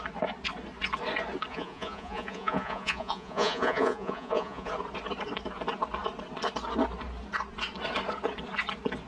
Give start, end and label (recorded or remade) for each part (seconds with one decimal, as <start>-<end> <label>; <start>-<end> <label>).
0.0-1.5 recorded; 1.5-4.7 remade; 4.7-9.1 recorded